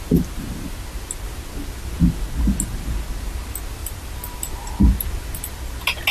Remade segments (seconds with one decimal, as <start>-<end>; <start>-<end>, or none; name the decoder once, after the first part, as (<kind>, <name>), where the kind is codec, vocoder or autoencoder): 3.8-4.4 (vocoder, BigVGAN v2)